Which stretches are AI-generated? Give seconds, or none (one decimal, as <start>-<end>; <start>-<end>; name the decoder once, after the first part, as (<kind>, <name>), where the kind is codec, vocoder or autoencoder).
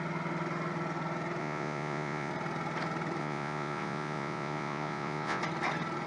1.4-2.3 (vocoder, Vocos); 3.2-5.4